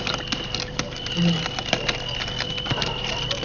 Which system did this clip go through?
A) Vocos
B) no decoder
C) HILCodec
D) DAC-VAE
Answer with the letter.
B